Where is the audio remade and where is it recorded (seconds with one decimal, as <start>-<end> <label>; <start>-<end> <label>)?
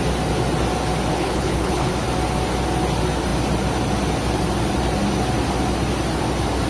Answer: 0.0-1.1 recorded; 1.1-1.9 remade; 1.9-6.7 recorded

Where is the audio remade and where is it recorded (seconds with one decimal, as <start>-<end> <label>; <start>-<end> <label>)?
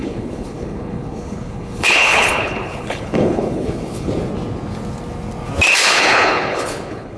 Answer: 0.0-4.1 remade; 4.1-5.8 recorded; 5.8-7.2 remade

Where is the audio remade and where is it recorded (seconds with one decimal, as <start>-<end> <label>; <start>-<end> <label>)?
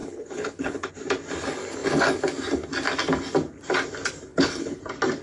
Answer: 0.0-0.9 remade; 0.9-4.3 recorded; 4.3-4.8 remade; 4.8-5.2 recorded